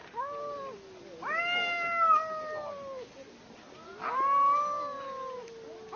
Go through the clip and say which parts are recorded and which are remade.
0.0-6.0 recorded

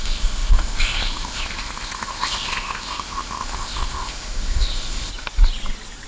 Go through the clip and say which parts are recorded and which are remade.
0.0-5.1 remade; 5.1-6.1 recorded

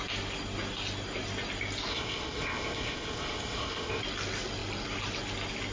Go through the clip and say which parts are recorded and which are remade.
0.0-1.9 recorded; 1.9-4.0 remade; 4.0-5.7 recorded

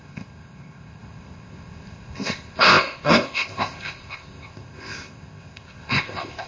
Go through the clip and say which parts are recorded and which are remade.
0.0-6.5 remade

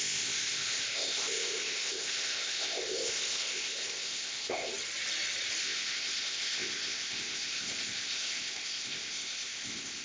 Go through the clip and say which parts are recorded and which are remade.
0.0-4.7 remade; 4.7-5.6 recorded; 5.6-10.0 remade

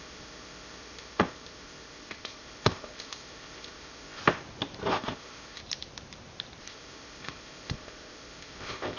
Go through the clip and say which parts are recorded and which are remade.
0.0-4.2 remade; 4.2-4.9 recorded; 4.9-5.6 remade; 5.6-6.6 recorded; 6.6-9.0 remade